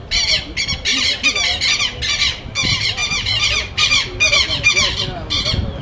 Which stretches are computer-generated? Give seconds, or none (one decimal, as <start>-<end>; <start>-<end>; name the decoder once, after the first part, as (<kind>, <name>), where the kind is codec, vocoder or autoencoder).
3.0-3.6 (vocoder, BigVGAN v2)